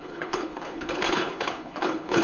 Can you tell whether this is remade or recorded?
remade